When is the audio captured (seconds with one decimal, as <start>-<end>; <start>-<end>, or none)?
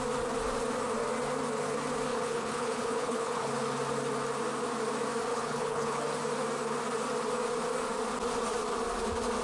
0.0-2.1; 3.5-5.3; 6.0-9.4